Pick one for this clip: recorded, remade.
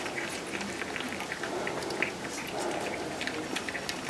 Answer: recorded